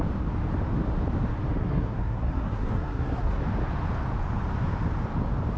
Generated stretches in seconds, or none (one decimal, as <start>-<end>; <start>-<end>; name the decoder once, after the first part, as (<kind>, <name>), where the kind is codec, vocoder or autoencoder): 1.6-3.4 (codec, SNAC)